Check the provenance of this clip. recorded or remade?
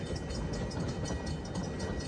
recorded